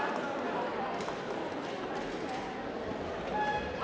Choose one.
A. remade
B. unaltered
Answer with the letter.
B